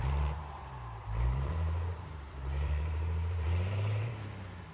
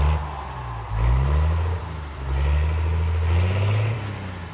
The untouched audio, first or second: second